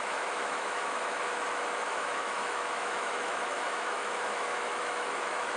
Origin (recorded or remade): remade